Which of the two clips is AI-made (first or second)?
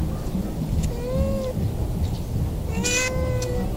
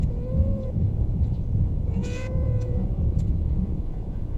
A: second